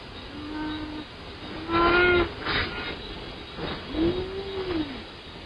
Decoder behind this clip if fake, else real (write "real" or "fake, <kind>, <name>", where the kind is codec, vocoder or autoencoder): real